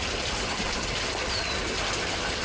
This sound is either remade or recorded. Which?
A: recorded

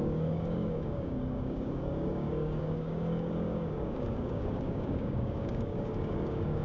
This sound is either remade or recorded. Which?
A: remade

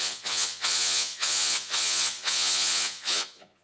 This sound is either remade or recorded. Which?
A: remade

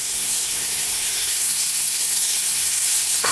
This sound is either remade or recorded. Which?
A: remade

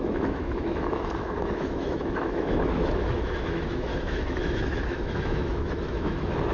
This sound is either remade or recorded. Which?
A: remade